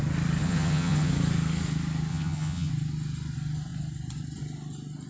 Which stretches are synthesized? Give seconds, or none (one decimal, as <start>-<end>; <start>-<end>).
0.4-1.1; 2.1-2.7